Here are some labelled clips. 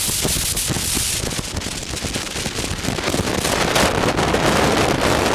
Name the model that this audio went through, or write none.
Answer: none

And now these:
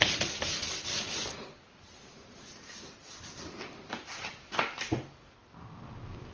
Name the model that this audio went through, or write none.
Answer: none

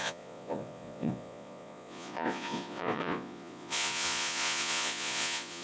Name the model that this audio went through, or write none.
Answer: vocoder, Vocos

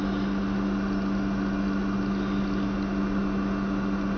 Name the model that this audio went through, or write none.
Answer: none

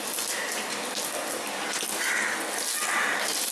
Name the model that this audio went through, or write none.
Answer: none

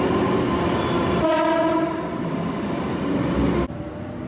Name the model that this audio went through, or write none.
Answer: none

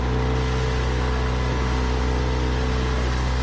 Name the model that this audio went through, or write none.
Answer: none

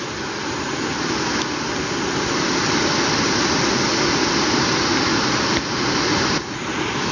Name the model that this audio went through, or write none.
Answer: none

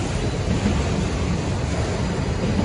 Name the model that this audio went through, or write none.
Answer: none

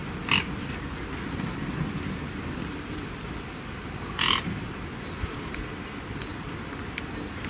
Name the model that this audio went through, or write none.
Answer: none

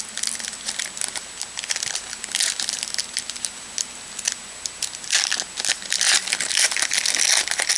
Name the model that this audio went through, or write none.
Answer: none